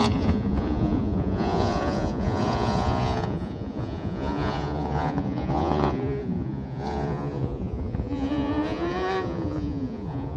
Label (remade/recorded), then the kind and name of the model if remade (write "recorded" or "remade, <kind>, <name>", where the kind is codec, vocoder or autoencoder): remade, vocoder, Vocos